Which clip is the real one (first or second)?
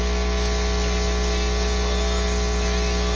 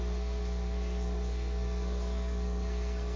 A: first